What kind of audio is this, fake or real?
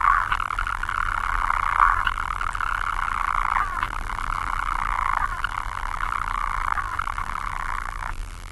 fake